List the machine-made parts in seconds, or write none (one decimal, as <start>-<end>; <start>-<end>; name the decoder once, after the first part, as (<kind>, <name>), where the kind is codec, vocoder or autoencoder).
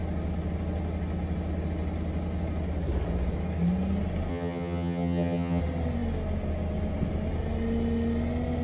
4.3-5.6 (vocoder, HiFi-GAN)